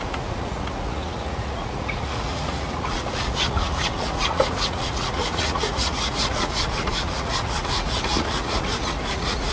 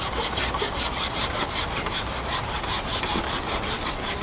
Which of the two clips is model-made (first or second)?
first